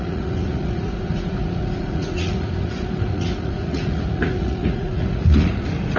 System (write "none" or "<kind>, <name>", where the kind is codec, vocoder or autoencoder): vocoder, Vocos